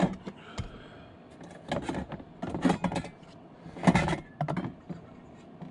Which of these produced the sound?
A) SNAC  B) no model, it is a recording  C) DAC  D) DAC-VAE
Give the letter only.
B